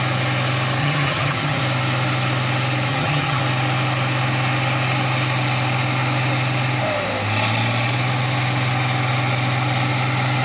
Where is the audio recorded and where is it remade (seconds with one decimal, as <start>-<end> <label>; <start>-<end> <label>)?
0.0-0.8 recorded; 0.8-1.6 remade; 1.6-2.9 recorded; 2.9-3.4 remade; 3.4-10.4 recorded